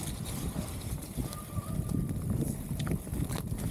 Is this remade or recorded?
remade